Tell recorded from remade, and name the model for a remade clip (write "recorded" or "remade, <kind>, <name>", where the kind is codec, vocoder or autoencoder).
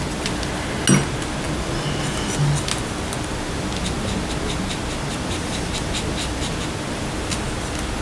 recorded